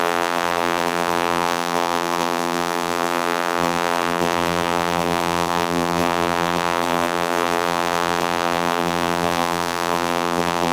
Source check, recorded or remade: remade